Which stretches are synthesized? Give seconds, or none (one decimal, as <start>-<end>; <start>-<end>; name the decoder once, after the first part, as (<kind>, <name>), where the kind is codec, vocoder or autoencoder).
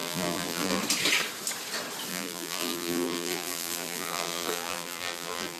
0.0-0.8 (vocoder, BigVGAN v2); 2.1-5.6